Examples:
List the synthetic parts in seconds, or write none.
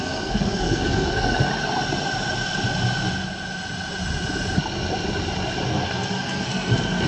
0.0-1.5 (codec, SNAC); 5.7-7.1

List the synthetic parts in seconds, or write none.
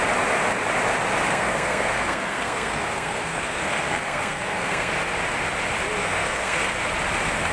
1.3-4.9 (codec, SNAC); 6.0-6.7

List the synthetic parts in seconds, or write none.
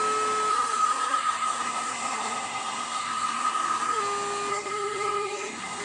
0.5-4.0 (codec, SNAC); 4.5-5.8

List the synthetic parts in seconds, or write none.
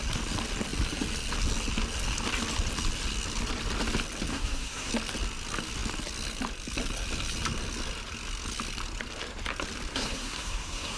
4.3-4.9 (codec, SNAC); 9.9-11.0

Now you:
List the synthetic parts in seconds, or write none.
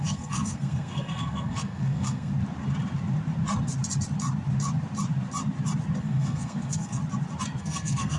0.0-2.3 (codec, SNAC); 6.0-7.0; 7.6-8.2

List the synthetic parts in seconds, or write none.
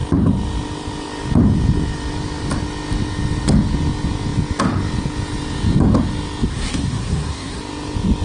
6.5-7.6 (codec, SNAC)